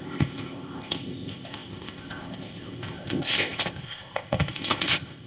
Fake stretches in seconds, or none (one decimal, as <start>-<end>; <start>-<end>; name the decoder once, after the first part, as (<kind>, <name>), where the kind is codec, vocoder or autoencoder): 0.0-5.3 (codec, ZipCodec)